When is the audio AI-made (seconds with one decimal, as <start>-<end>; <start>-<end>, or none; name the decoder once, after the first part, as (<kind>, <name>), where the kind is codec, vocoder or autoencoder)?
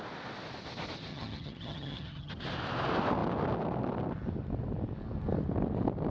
1.1-2.3 (vocoder, HiFi-GAN)